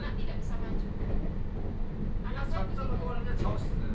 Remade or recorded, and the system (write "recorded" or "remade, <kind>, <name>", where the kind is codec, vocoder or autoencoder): recorded